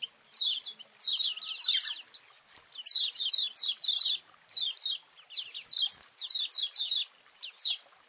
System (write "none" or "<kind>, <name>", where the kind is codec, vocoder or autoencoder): none